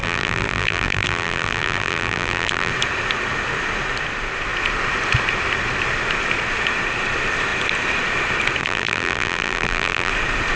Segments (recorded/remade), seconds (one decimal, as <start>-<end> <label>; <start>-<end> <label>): 0.0-2.7 remade; 2.7-8.6 recorded; 8.6-10.1 remade; 10.1-10.6 recorded